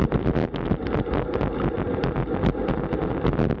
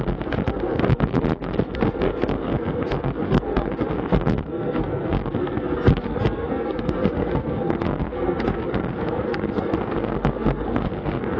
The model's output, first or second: second